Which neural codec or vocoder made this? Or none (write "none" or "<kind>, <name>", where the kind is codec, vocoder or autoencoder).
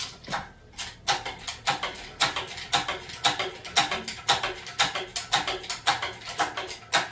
none